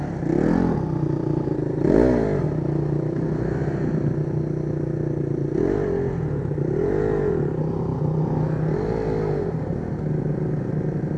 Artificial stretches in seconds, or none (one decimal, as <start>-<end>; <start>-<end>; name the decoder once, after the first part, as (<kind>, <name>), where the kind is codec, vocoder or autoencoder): none